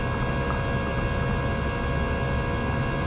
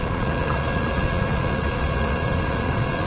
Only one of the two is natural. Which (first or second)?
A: first